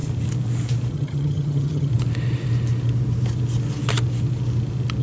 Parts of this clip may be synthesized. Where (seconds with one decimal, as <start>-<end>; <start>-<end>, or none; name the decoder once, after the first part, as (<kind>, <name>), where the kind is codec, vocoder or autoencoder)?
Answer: 0.9-1.9 (vocoder, HiFi-GAN)